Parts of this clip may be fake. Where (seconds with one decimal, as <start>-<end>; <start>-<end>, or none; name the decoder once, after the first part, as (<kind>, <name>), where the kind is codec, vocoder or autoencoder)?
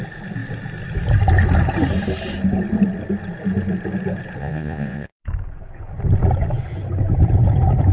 4.4-5.1 (vocoder, Vocos)